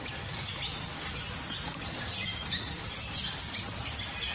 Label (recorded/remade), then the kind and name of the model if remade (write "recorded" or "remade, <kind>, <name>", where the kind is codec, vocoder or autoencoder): recorded